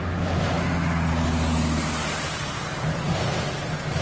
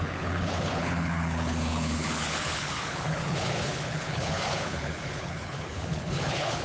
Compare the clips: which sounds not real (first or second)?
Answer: second